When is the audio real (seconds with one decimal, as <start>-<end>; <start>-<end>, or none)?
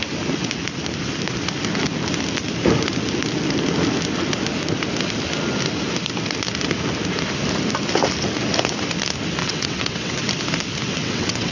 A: 0.0-9.4; 10.2-10.9